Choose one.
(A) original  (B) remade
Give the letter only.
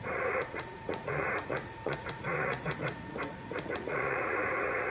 B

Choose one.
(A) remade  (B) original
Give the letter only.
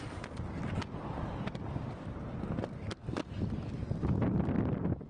B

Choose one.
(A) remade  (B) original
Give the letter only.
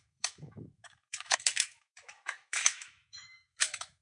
A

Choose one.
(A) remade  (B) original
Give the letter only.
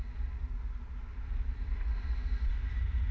B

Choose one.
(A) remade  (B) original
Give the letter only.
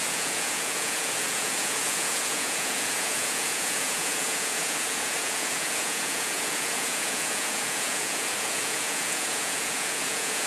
A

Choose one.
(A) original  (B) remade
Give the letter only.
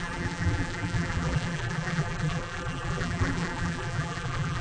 B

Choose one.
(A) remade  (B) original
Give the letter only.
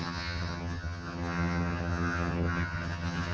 A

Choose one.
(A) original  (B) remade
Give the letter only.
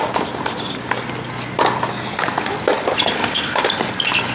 A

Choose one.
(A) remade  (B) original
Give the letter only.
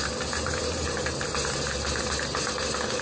B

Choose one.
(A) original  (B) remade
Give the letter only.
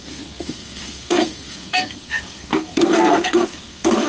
B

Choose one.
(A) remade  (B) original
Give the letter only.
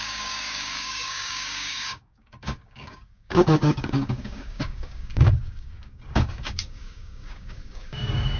A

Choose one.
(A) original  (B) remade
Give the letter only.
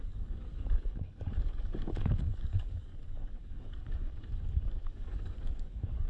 B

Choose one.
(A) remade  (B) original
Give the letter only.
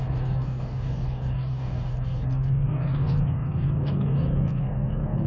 A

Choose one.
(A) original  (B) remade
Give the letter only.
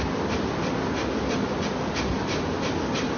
A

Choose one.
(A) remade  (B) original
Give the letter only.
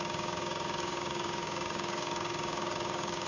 A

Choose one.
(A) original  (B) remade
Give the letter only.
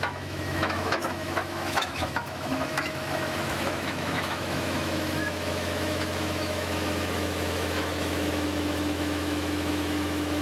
B